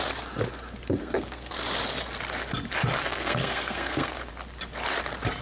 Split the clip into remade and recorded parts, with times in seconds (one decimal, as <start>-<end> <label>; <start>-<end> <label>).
0.0-1.0 recorded; 1.0-1.5 remade; 1.5-3.0 recorded; 3.0-4.3 remade; 4.3-5.4 recorded